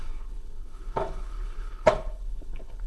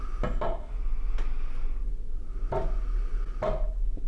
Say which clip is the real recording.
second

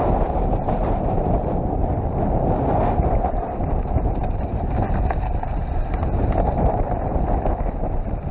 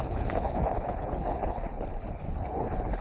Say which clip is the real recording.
first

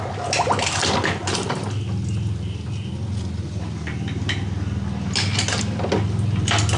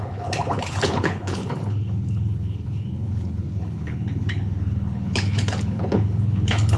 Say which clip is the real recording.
first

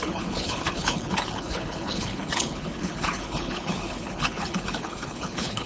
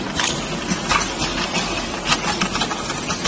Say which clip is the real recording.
second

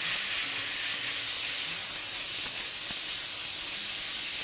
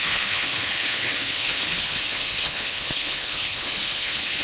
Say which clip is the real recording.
first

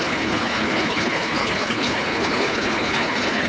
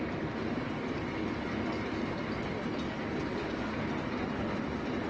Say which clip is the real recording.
second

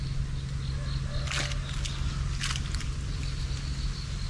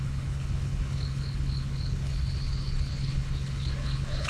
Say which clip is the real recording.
first